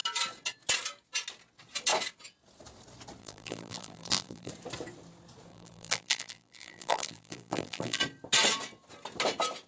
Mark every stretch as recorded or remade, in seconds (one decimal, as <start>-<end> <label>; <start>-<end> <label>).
0.0-3.2 recorded; 3.2-4.5 remade; 4.5-5.5 recorded; 5.5-8.0 remade; 8.0-9.7 recorded